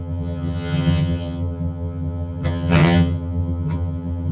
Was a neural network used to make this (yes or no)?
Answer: yes